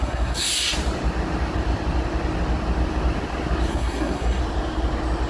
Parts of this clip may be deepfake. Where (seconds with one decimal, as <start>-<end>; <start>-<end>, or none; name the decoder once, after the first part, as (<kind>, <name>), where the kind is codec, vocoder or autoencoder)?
0.0-0.5 (codec, SNAC); 3.7-4.4